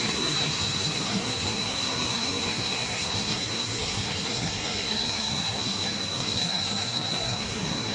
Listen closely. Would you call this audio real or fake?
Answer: fake